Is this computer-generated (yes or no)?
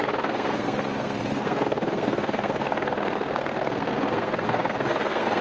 yes